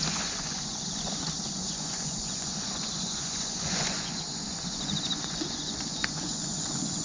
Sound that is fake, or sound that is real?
fake